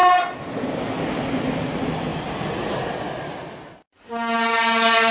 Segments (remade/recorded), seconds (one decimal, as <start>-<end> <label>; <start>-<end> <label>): 0.0-5.1 recorded